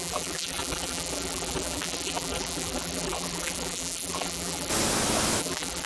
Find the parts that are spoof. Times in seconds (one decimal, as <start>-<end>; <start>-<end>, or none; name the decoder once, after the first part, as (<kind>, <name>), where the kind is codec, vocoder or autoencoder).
0.0-4.7 (vocoder, BigVGAN v2); 5.4-5.9